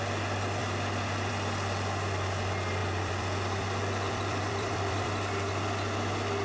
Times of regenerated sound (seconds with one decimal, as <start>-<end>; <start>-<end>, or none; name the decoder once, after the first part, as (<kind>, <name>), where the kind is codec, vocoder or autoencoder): 0.6-1.3 (vocoder, BigVGAN v2); 2.8-5.5